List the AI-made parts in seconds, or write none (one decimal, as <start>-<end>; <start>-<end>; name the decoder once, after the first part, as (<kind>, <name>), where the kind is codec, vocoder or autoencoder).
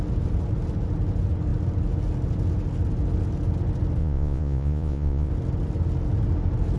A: 4.0-5.3 (vocoder, Vocos)